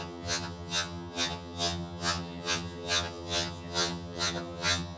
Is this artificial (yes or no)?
yes